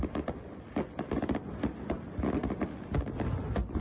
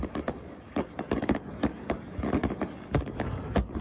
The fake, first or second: second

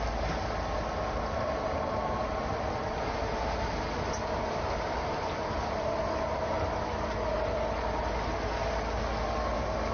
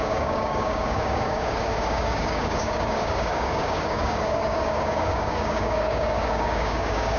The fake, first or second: second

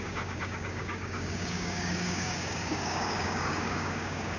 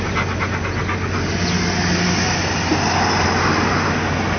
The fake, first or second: first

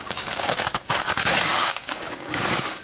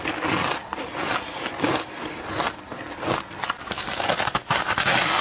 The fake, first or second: first